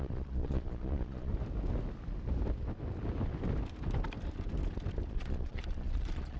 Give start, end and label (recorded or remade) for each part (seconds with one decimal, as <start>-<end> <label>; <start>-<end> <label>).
0.0-1.3 remade; 1.3-5.1 recorded; 5.1-6.4 remade